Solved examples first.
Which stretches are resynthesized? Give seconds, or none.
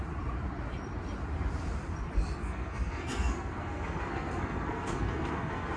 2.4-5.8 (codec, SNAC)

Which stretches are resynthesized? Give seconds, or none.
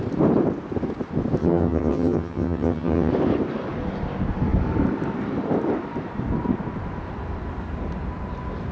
1.4-3.1 (vocoder, HiFi-GAN)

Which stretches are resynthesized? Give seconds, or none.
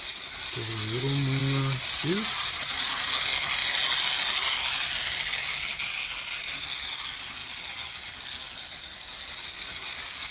1.4-3.1 (vocoder, BigVGAN v2)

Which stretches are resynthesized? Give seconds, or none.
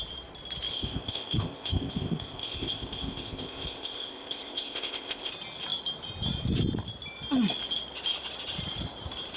0.7-5.3 (codec, ZipCodec)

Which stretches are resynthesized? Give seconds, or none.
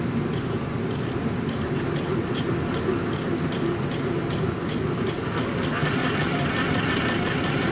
none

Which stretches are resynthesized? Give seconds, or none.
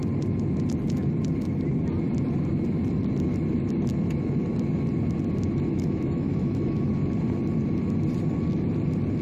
5.7-6.9 (autoencoder, DAC-VAE)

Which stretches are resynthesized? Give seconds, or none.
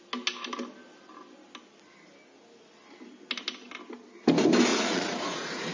4.7-5.7 (vocoder, Vocos)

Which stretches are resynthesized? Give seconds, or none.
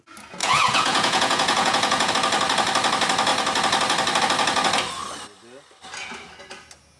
0.4-2.1 (vocoder, Vocos)